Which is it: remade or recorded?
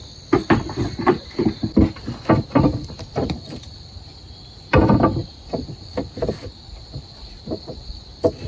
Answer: recorded